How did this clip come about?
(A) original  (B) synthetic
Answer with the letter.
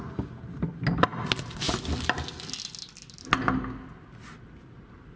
A